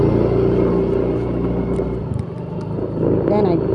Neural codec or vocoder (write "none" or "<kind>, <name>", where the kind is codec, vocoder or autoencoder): none